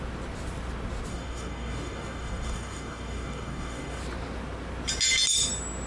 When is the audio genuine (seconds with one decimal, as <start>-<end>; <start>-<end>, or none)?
0.0-1.1; 4.0-5.9